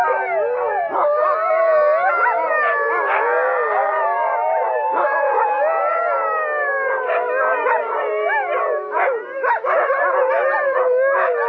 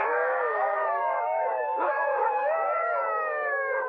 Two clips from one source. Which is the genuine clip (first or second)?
first